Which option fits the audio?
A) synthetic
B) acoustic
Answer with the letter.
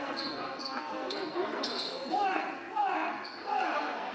A